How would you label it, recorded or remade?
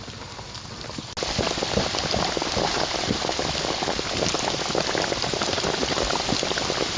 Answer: recorded